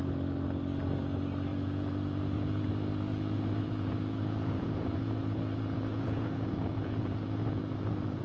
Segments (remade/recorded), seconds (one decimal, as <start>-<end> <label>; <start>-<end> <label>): 0.0-1.5 recorded; 1.5-2.7 remade; 2.7-3.1 recorded; 3.1-8.2 remade